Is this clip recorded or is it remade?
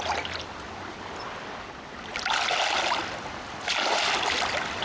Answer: recorded